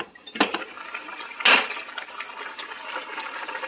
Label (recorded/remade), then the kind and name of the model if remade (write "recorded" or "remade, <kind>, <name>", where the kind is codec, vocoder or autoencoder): recorded